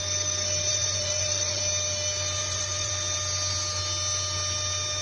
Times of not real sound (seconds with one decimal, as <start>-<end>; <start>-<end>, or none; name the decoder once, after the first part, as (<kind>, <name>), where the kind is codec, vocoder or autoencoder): 0.7-1.6 (vocoder, Vocos); 2.4-2.9